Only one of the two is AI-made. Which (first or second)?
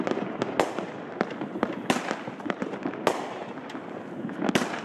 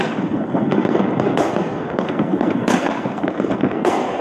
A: second